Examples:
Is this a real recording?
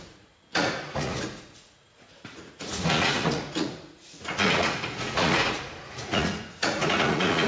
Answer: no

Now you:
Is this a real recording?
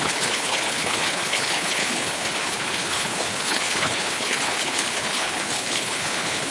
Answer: no